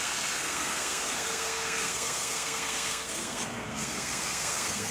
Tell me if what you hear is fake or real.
fake